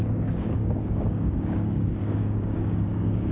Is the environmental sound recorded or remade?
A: remade